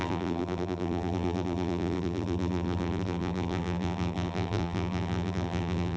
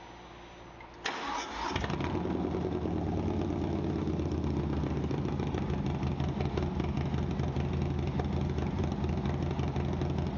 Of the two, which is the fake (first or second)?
first